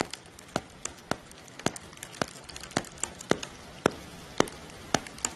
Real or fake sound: real